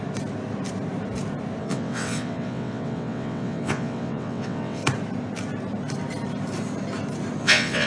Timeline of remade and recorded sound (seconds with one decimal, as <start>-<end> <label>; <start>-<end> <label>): 0.0-1.6 recorded; 1.6-4.8 remade; 4.8-7.4 recorded; 7.4-7.9 remade